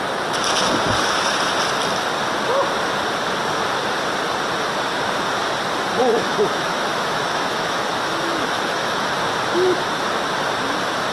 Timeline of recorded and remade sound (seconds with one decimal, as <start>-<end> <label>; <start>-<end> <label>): 0.0-6.0 recorded; 6.0-9.2 remade; 9.2-11.1 recorded